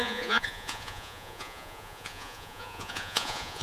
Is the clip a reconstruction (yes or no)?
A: yes